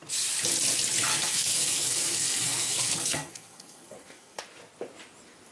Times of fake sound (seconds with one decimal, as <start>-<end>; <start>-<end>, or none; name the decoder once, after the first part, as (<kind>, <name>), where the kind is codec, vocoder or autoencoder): 1.1-4.4 (codec, SNAC)